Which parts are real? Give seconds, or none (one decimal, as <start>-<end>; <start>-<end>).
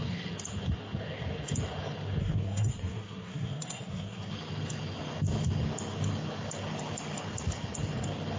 0.0-2.2; 4.3-8.4